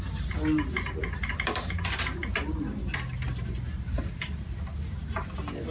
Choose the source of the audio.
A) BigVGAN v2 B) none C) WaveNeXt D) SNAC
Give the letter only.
B